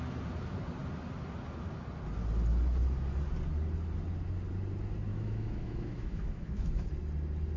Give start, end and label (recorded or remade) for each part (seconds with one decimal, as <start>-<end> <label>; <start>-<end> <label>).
0.0-5.1 recorded; 5.1-6.9 remade; 6.9-7.6 recorded